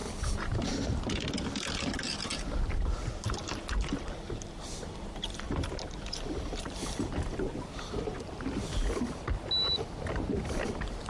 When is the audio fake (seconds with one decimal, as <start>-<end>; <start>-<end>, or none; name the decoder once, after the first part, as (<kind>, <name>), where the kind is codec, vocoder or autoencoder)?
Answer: 0.0-8.1 (vocoder, BigVGAN v2)